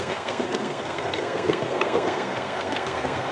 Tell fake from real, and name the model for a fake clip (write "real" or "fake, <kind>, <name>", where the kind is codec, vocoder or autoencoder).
fake, codec, SNAC